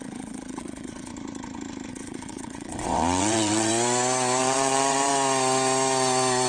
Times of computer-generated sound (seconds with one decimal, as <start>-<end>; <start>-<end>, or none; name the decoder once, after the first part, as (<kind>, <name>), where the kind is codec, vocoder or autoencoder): 0.0-1.1 (vocoder, WaveNeXt); 1.9-3.7; 4.4-5.1